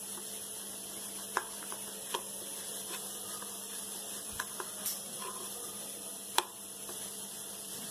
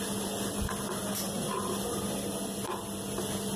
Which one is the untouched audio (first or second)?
second